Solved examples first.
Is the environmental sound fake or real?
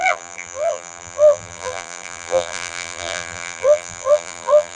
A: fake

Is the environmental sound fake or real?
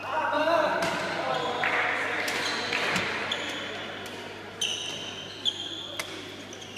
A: real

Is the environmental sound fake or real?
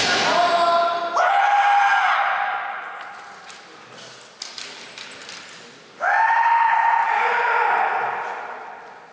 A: real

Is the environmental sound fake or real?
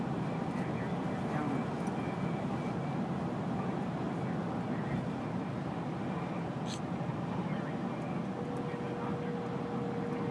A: real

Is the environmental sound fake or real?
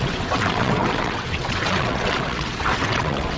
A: fake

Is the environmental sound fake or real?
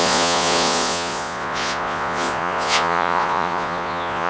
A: fake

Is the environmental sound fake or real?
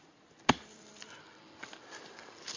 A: real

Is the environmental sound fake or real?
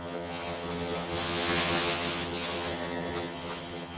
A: fake